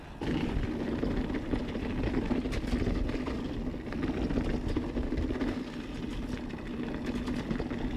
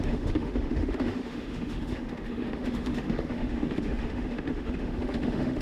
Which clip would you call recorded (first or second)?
first